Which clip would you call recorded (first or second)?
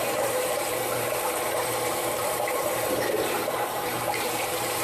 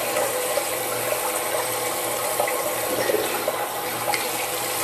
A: second